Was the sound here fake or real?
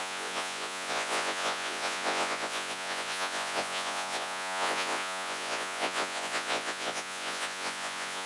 fake